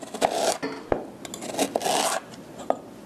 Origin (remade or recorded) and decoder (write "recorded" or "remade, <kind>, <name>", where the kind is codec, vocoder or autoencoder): recorded